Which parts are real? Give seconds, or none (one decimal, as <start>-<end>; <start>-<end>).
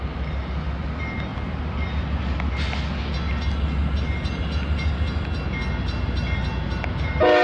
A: 0.0-7.4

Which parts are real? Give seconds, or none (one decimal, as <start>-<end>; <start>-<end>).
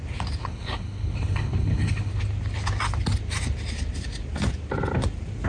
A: 0.0-0.4; 2.1-5.5